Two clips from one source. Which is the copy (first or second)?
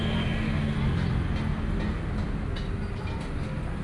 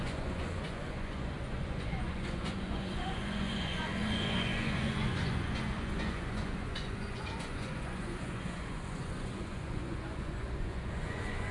second